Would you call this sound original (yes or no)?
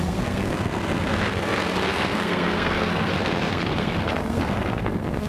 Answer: no